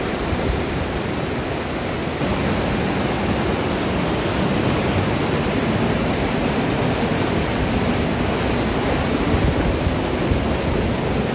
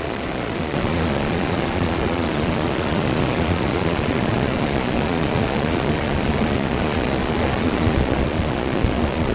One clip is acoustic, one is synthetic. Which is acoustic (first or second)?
first